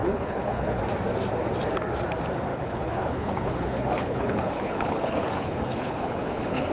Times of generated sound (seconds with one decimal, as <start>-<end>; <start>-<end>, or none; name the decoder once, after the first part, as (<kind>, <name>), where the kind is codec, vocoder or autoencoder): 0.0-0.8 (codec, HILCodec); 2.5-6.7